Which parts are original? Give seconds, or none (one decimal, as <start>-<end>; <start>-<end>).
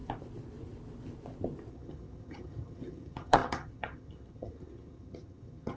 0.0-1.7